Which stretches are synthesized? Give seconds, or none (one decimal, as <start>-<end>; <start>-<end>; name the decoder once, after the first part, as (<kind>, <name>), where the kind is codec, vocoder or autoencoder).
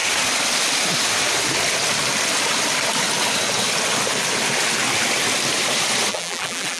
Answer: 6.1-6.8 (vocoder, BigVGAN v2)